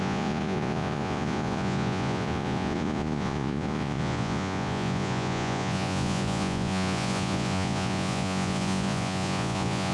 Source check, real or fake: fake